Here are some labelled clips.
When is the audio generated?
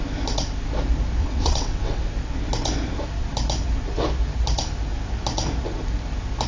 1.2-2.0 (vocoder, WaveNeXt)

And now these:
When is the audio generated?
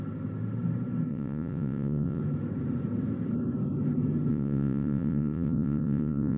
1.1-2.2 (vocoder, WaveNeXt); 4.3-6.4